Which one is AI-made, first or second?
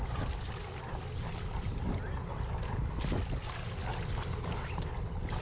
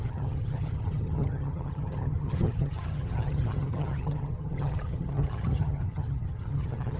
second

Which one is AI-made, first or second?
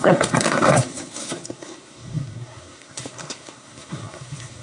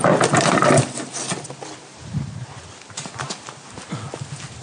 first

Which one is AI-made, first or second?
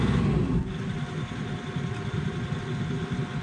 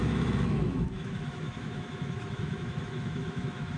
second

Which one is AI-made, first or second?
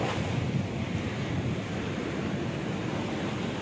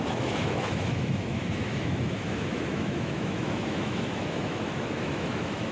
second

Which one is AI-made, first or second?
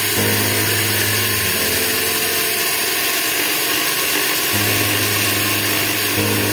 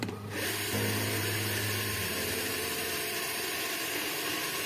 second